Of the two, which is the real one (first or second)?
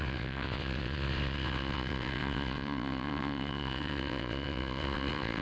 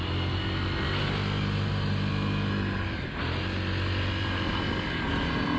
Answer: second